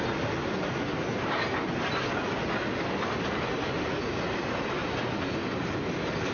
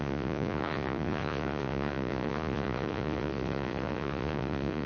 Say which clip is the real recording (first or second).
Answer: first